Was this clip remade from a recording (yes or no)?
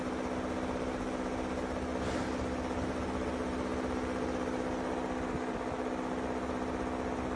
no